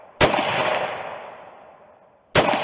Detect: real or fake real